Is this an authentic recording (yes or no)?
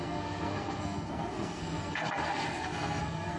no